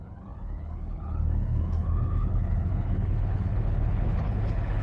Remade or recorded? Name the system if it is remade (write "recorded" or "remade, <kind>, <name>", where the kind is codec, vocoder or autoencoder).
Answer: remade, codec, HILCodec